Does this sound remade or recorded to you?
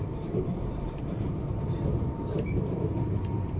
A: remade